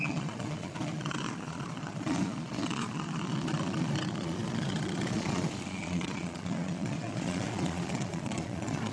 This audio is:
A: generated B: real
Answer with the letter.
A